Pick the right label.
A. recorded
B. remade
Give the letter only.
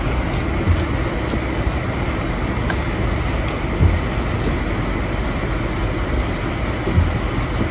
A